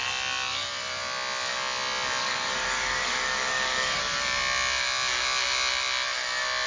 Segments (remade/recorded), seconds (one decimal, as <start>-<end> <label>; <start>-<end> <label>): 0.0-2.2 recorded; 2.2-4.0 remade; 4.0-6.7 recorded